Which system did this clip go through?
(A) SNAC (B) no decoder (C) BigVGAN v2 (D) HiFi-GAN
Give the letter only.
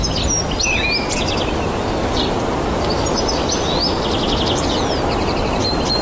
B